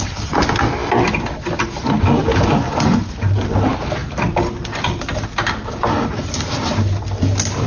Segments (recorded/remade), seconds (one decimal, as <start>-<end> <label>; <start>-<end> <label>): 0.0-7.7 recorded

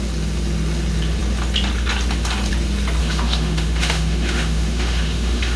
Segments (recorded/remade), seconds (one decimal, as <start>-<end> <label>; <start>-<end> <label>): 0.0-3.0 recorded; 3.0-5.6 remade

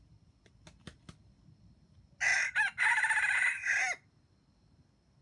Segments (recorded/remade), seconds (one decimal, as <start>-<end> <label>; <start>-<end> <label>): 0.0-5.2 recorded

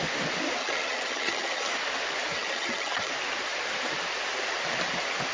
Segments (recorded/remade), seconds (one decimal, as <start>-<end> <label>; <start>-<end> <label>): 0.0-0.6 recorded; 0.6-1.7 remade; 1.7-2.3 recorded; 2.3-3.1 remade; 3.1-5.3 recorded

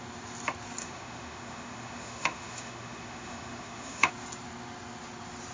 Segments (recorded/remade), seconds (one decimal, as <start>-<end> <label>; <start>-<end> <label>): 0.0-0.8 recorded; 0.8-4.1 remade; 4.1-5.5 recorded

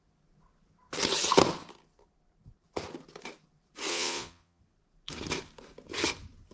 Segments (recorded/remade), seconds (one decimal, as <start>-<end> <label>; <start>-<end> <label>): 0.0-3.9 recorded; 3.9-4.6 remade; 4.6-6.5 recorded

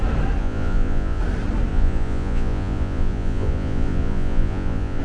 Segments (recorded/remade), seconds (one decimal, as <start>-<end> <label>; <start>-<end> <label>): 0.0-0.4 recorded; 0.4-1.2 remade; 1.2-1.7 recorded; 1.7-5.0 remade

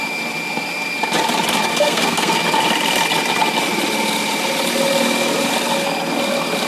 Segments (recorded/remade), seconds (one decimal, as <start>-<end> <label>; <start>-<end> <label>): 0.0-1.7 recorded; 1.7-2.4 remade; 2.4-6.7 recorded